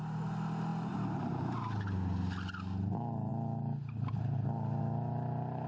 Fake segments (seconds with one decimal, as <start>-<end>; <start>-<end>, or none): none